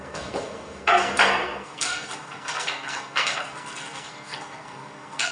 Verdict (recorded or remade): remade